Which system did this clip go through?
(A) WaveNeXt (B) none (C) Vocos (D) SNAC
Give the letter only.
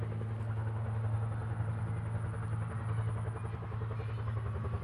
B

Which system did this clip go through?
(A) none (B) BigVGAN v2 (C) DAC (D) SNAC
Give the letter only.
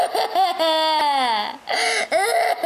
A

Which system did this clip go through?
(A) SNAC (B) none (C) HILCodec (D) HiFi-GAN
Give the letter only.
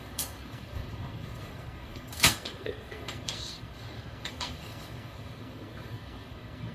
A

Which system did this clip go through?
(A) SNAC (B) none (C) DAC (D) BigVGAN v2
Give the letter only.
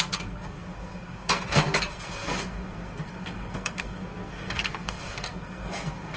A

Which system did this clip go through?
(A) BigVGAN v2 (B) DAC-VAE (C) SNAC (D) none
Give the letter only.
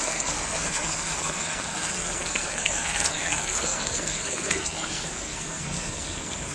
C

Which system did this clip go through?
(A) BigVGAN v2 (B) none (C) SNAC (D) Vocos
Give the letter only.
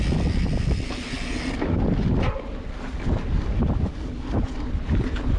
B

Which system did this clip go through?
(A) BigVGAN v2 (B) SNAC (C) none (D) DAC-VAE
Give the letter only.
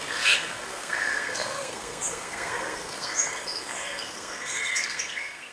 B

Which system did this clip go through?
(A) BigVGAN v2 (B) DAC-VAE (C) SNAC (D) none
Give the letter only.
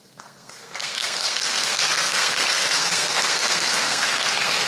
C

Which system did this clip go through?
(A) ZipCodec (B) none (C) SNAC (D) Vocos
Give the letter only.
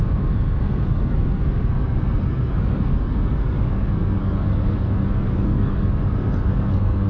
C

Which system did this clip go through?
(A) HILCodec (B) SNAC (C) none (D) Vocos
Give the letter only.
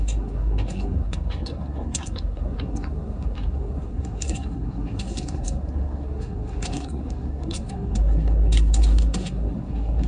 B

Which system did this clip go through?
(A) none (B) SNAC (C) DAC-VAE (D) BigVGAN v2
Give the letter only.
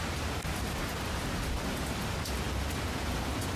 A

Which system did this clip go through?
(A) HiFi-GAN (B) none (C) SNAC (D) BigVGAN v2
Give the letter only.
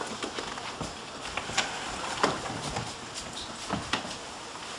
B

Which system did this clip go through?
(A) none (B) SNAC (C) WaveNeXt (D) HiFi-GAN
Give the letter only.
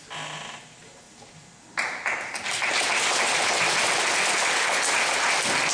A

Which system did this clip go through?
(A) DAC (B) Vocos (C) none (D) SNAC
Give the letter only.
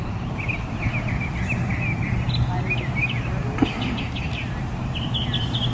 C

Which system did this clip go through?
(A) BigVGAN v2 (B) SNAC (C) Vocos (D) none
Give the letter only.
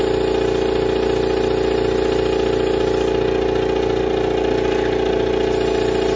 D